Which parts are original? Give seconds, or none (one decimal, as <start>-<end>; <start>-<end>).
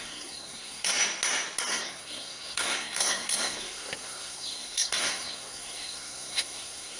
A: 0.9-1.7